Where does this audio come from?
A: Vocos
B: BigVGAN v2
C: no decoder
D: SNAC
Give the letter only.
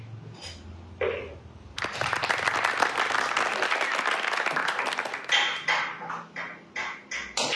C